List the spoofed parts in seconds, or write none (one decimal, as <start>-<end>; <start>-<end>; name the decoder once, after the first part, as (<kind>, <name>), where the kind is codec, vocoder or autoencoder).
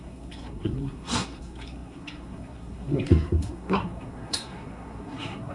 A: 0.0-5.5 (codec, SNAC)